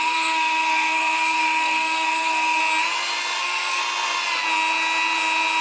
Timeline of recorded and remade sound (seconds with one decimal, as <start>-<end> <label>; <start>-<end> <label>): 0.0-2.6 remade; 2.6-3.4 recorded; 3.4-3.8 remade; 3.8-5.6 recorded